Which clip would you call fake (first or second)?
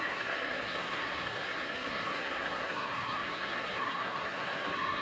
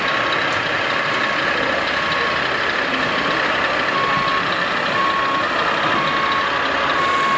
first